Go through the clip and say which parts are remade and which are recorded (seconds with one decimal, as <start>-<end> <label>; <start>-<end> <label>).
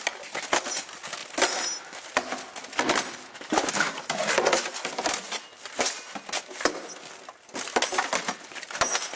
0.0-9.2 recorded